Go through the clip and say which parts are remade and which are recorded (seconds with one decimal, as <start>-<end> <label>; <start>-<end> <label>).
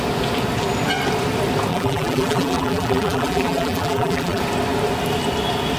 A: 0.0-1.7 recorded; 1.7-4.4 remade; 4.4-5.8 recorded